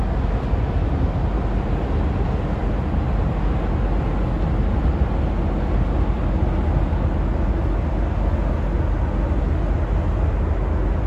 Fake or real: real